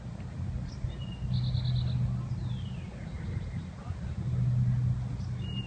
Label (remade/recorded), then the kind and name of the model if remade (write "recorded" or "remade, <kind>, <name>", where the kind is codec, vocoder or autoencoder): recorded